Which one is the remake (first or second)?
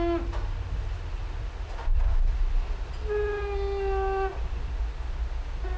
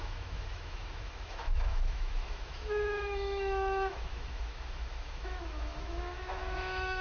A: second